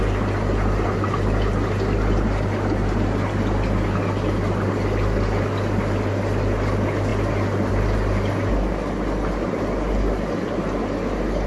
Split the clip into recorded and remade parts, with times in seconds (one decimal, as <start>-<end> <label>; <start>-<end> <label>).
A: 0.0-11.5 recorded